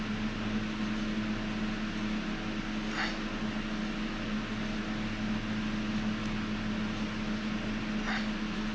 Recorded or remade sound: recorded